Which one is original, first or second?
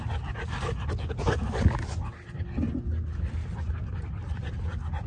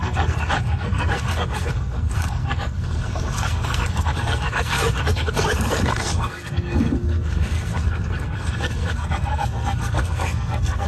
first